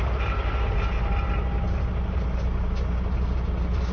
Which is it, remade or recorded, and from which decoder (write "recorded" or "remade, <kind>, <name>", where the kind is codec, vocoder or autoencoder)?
recorded